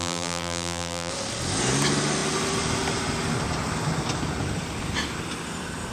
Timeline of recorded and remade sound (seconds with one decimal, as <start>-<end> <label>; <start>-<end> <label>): 0.0-1.1 remade; 1.1-5.9 recorded